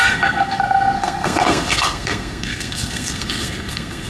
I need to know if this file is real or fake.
fake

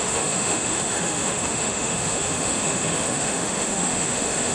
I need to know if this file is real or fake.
fake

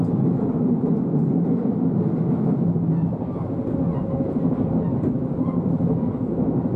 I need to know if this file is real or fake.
real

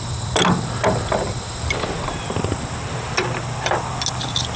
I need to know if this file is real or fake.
real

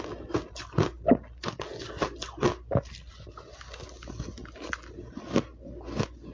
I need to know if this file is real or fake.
real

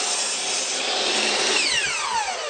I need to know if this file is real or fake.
fake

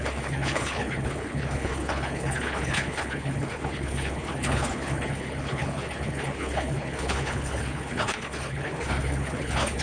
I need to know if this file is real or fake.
fake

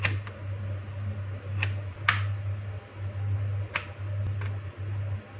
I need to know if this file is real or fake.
real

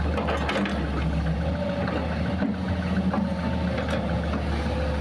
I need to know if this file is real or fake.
real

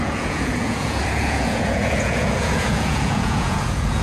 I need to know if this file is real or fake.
fake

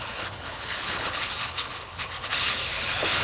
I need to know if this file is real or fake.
fake